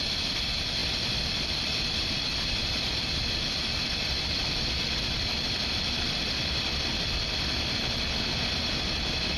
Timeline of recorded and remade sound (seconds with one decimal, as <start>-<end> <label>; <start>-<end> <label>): 0.0-9.4 remade